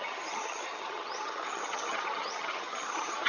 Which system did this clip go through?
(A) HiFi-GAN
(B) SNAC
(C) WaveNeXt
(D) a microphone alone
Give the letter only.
A